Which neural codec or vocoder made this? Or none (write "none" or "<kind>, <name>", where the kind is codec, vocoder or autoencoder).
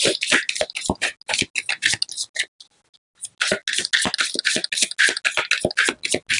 none